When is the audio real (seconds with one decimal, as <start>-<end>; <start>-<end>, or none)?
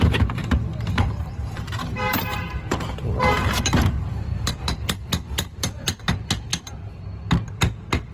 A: 6.5-8.1